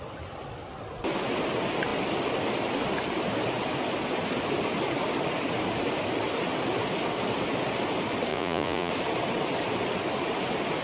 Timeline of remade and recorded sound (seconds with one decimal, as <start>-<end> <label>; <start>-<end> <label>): 0.0-8.3 recorded; 8.3-8.9 remade; 8.9-10.8 recorded